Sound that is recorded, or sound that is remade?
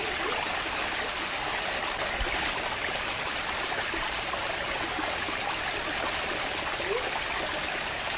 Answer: recorded